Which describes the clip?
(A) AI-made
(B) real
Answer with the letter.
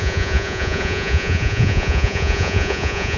A